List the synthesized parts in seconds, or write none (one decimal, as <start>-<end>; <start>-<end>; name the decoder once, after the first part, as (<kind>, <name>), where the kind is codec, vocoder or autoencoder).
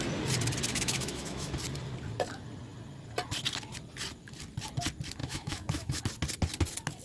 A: 0.7-1.5 (autoencoder, DAC-VAE); 5.2-6.0